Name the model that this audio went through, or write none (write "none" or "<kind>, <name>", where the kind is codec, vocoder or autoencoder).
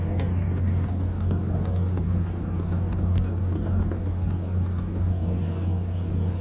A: codec, DAC